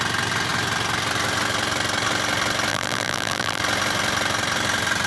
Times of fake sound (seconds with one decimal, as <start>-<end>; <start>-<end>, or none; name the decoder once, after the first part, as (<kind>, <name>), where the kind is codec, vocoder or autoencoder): 2.7-3.6 (vocoder, BigVGAN v2)